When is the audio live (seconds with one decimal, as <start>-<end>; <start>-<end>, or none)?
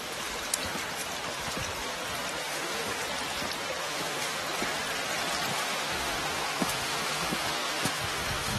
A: 0.0-2.4; 3.0-3.8; 4.4-5.5